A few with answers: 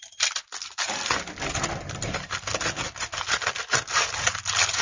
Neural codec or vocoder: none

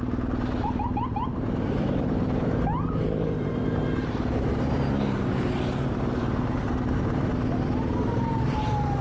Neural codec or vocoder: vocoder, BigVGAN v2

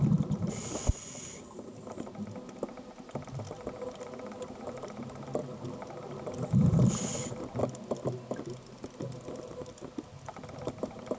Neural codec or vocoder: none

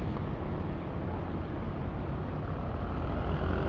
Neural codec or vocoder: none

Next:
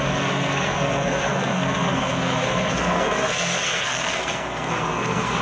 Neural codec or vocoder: codec, SNAC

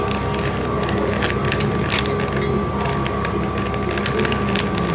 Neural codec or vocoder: none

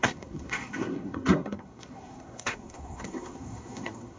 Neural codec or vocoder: codec, SNAC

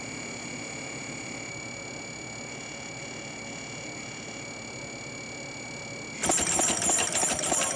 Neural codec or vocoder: none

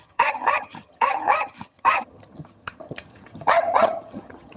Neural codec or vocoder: vocoder, HiFi-GAN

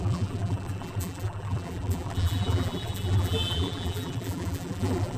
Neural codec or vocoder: vocoder, BigVGAN v2